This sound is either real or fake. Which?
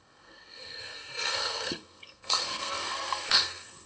fake